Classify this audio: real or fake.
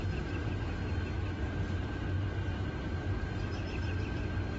real